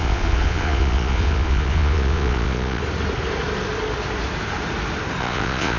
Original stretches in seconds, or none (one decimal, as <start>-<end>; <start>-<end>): 2.8-5.2